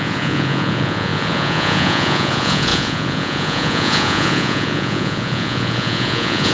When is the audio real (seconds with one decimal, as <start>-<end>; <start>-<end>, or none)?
none